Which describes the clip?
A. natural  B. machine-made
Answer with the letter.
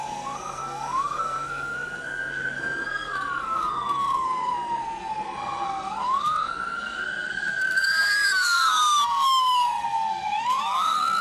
B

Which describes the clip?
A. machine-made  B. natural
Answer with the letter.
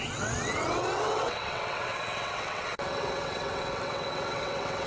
A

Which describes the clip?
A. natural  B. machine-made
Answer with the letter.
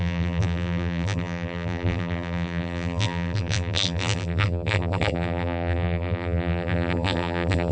B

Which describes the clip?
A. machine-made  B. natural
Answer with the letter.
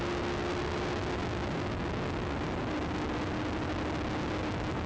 B